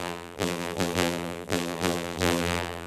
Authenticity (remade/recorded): remade